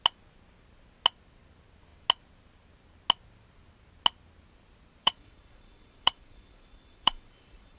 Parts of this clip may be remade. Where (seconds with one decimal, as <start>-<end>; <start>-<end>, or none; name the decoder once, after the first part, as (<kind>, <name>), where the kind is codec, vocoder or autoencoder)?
5.0-7.8 (vocoder, Vocos)